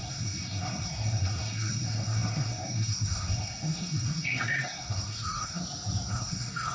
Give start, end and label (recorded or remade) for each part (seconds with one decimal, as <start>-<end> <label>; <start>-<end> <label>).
0.0-5.6 remade; 5.6-6.1 recorded; 6.1-6.7 remade